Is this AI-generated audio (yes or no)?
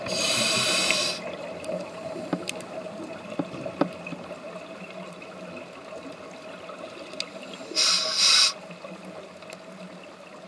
no